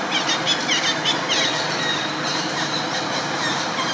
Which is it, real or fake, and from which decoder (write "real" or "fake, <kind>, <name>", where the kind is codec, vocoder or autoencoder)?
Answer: real